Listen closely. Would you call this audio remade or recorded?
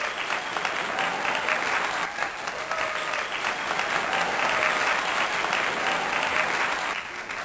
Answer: recorded